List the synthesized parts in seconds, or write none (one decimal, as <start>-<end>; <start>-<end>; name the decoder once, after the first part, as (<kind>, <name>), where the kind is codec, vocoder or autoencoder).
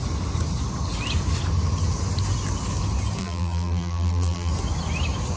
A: 3.2-4.5 (vocoder, BigVGAN v2)